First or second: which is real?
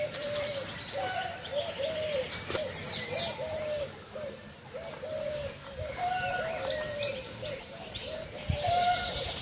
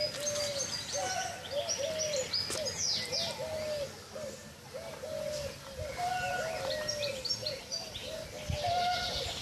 second